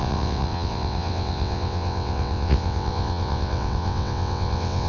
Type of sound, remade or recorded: remade